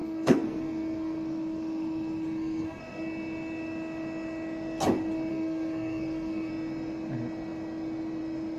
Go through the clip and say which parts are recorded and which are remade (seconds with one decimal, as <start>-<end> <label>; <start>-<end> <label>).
0.0-2.8 remade; 2.8-5.3 recorded; 5.3-6.5 remade; 6.5-8.6 recorded